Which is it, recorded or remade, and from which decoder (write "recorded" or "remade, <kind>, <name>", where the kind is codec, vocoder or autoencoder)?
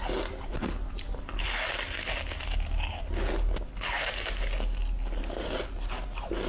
recorded